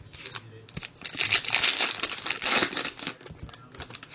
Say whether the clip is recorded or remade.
recorded